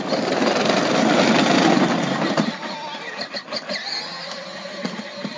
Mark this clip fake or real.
real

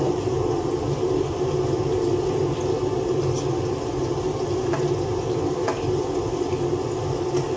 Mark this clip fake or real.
real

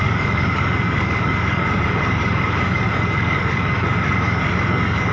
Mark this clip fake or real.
fake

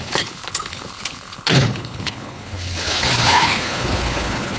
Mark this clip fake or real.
fake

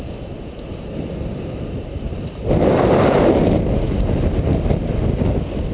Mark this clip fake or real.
real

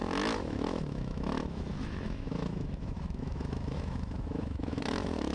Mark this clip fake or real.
fake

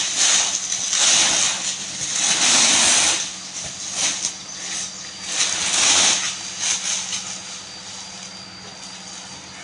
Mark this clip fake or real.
real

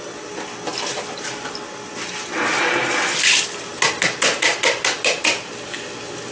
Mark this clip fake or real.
real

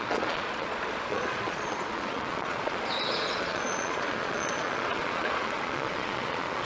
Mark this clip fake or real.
fake